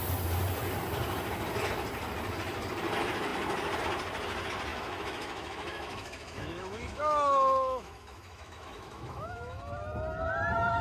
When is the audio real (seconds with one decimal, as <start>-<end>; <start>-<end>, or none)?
0.0-4.7; 9.6-10.8